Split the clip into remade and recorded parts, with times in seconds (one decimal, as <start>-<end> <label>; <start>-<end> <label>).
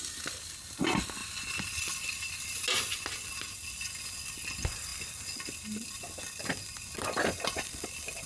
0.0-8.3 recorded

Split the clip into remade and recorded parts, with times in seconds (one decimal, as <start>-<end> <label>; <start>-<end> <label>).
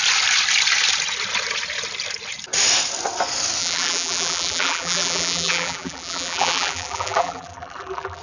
0.0-3.6 recorded; 3.6-8.2 remade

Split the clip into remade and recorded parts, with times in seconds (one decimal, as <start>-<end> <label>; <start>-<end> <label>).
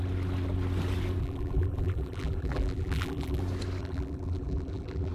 0.0-1.2 recorded; 1.2-3.4 remade; 3.4-3.8 recorded; 3.8-5.1 remade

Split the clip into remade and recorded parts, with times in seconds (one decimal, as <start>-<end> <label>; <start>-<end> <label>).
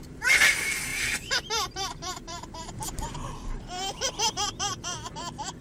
0.0-5.6 remade